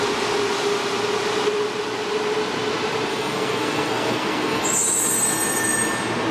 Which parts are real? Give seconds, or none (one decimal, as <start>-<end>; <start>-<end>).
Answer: 0.0-3.1; 4.6-6.3